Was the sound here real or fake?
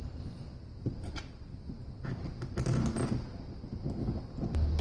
real